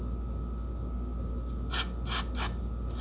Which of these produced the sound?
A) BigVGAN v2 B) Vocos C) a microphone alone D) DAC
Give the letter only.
C